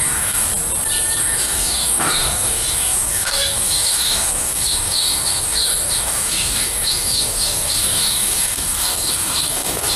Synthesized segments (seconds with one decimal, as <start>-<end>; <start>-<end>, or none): 0.0-0.5; 1.2-10.0